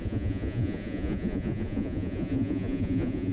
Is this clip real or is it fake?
fake